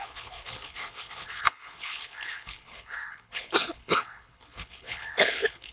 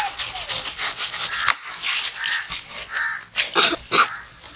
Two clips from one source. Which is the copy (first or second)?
first